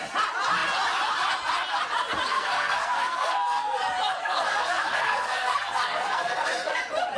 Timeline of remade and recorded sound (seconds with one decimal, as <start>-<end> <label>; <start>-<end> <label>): 0.0-2.3 recorded; 2.3-3.8 remade; 3.8-4.2 recorded; 4.2-6.8 remade; 6.8-7.2 recorded